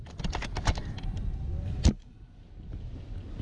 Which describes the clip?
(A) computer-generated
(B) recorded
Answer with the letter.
B